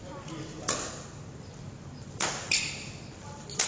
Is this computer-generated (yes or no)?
no